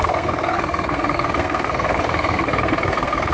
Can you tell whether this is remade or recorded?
remade